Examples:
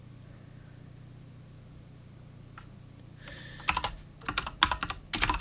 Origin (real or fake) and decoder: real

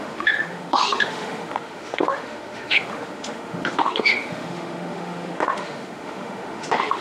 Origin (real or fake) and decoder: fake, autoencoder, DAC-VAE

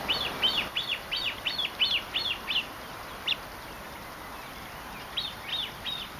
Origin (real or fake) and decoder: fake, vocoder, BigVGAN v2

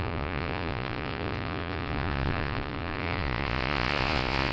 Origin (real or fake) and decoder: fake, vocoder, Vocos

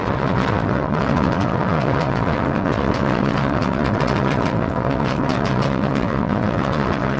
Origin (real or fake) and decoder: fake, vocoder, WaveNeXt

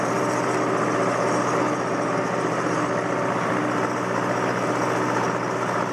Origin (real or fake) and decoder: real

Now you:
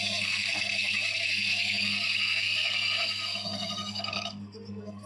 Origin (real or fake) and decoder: fake, codec, SNAC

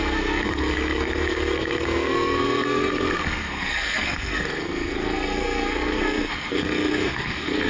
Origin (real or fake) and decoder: fake, codec, SNAC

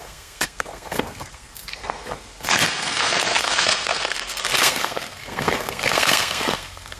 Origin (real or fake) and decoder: fake, codec, SNAC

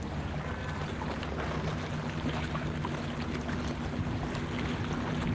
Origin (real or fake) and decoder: real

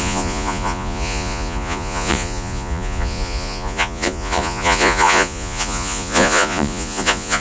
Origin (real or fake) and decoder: fake, vocoder, Vocos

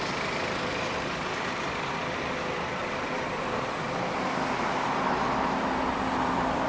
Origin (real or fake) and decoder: fake, vocoder, BigVGAN v2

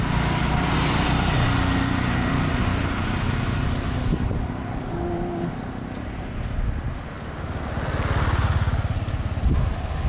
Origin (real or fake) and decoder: real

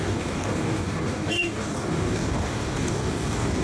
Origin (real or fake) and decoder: fake, codec, DAC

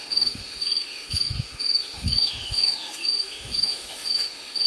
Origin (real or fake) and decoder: fake, autoencoder, DAC-VAE